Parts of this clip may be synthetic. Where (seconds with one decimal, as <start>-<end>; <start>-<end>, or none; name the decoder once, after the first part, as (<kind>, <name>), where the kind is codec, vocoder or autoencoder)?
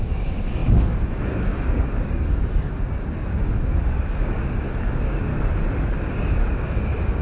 0.0-5.3 (codec, DAC); 5.9-7.2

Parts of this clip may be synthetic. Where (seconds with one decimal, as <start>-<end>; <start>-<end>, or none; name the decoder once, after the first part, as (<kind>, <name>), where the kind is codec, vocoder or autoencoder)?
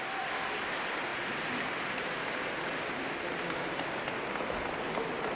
none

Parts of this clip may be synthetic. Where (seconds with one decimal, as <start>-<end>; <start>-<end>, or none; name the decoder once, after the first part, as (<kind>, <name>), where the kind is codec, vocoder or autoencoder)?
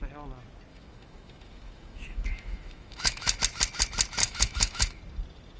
0.7-3.4 (autoencoder, DAC-VAE); 4.2-5.0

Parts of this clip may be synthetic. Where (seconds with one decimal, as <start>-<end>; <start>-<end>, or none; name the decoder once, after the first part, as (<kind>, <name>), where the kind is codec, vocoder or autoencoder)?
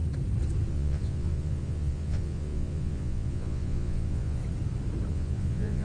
0.7-4.4 (vocoder, Vocos); 5.1-5.8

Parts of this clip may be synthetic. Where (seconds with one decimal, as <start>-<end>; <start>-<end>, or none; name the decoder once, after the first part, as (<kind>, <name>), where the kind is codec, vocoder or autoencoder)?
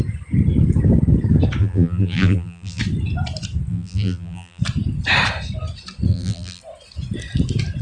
1.6-2.8 (vocoder, BigVGAN v2); 3.7-4.6; 6.1-6.6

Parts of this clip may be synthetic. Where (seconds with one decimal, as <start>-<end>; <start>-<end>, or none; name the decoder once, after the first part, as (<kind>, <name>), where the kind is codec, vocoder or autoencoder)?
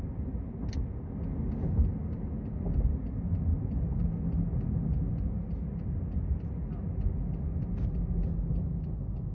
none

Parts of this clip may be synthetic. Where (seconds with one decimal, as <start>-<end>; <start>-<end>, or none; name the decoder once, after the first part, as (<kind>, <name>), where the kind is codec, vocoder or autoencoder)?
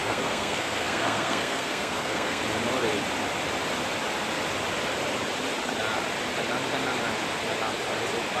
0.0-2.4 (codec, SNAC)